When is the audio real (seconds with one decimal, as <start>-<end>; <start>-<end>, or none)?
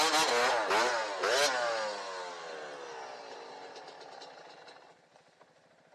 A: 0.0-5.9